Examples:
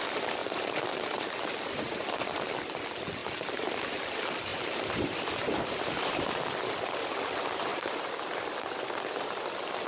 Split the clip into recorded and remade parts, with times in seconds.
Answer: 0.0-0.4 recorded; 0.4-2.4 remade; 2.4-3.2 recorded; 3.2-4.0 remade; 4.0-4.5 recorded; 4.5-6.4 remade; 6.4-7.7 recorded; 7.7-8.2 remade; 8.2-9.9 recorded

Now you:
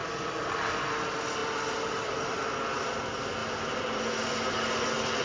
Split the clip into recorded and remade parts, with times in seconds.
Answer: 0.0-3.4 recorded; 3.4-4.1 remade; 4.1-5.2 recorded